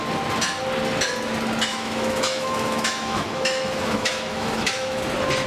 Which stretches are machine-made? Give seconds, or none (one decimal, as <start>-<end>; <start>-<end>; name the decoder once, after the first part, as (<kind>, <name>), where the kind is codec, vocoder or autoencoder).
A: 1.7-5.0 (autoencoder, DAC-VAE)